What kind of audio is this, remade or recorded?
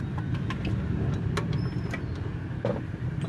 recorded